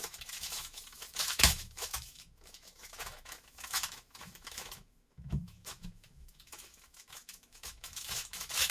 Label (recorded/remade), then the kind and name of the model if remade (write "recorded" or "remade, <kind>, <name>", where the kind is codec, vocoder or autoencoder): remade, autoencoder, DAC-VAE